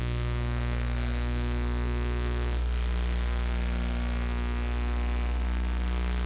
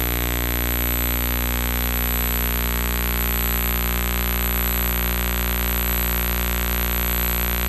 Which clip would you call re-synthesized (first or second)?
first